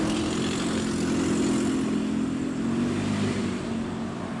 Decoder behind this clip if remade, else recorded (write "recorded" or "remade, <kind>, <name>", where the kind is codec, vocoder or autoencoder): recorded